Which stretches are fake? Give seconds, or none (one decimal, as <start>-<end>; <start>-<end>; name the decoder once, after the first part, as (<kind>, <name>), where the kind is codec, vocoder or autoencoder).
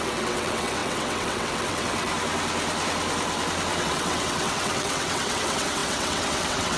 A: 0.0-2.1 (vocoder, WaveNeXt); 3.8-6.8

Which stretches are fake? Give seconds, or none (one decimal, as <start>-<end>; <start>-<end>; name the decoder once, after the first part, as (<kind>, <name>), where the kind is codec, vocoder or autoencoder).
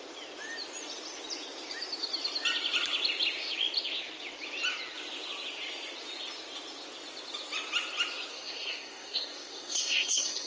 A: 8.3-10.5 (codec, SNAC)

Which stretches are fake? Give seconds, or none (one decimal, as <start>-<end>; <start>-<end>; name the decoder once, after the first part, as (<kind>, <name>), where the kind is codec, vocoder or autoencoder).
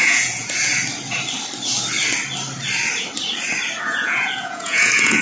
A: 0.0-0.7 (vocoder, Vocos); 3.8-5.2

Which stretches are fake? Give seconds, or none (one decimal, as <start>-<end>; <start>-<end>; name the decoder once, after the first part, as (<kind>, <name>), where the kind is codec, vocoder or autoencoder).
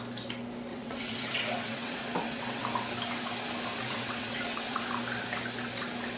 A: 0.7-2.6 (vocoder, WaveNeXt); 3.7-4.8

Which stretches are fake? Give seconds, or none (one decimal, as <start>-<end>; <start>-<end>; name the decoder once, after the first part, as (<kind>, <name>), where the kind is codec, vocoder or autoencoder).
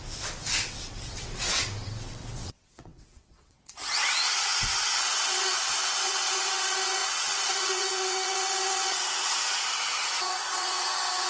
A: 0.6-11.3 (vocoder, WaveNeXt)